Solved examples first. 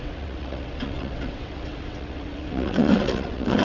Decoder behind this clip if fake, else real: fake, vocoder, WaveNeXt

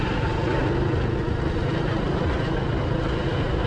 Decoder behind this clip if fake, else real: real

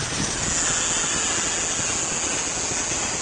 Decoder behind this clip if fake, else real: real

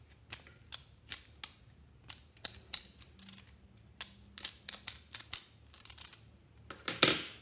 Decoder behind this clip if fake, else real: real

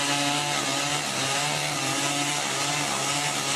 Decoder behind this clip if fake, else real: real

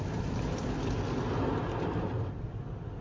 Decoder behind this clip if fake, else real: real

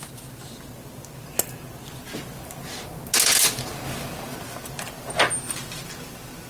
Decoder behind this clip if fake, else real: real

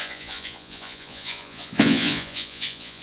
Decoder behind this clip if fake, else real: fake, vocoder, Vocos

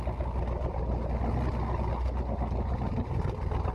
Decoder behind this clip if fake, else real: real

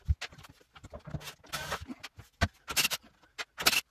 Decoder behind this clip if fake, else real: real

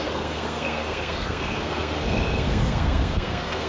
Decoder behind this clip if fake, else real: fake, codec, SNAC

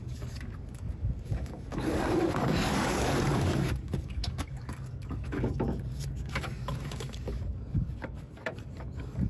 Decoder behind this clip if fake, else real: fake, codec, DAC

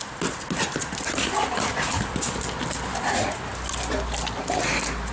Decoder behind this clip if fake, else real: real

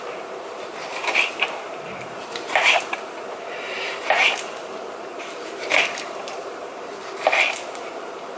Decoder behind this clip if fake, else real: fake, vocoder, BigVGAN v2